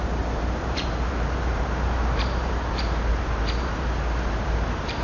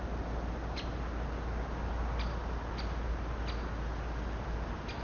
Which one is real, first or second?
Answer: second